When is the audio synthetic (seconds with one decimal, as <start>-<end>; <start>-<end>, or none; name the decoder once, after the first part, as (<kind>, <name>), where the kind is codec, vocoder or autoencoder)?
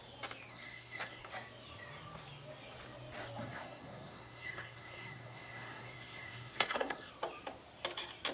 0.5-1.2 (codec, SNAC); 3.4-7.1